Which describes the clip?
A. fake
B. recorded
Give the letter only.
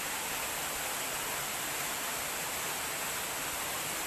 B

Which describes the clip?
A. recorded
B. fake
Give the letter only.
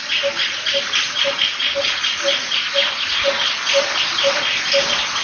A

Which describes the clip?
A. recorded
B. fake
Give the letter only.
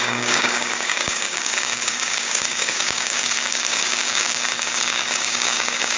B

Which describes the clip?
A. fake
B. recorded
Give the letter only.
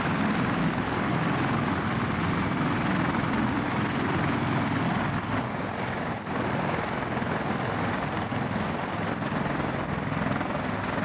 B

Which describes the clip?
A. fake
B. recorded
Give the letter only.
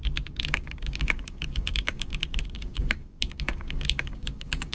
A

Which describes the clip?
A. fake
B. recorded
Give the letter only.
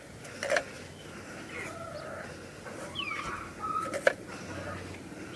B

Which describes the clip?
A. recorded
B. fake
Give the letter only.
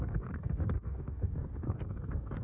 B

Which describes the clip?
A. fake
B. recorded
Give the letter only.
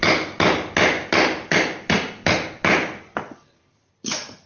B